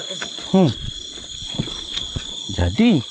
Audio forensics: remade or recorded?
remade